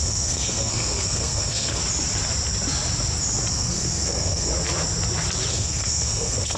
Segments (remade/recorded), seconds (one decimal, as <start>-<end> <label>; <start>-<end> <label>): 0.0-1.8 remade; 1.8-3.5 recorded; 3.5-4.5 remade; 4.5-5.5 recorded; 5.5-6.6 remade